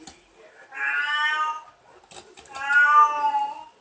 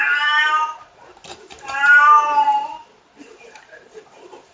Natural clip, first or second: first